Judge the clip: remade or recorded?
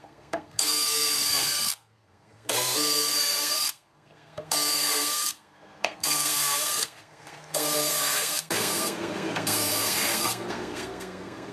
remade